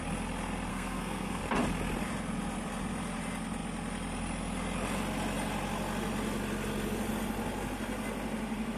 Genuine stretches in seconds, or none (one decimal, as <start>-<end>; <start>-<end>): 0.0-0.7; 1.4-8.8